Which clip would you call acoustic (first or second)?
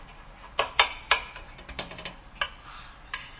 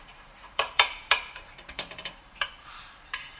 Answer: first